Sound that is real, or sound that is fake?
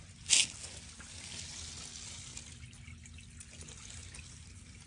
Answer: real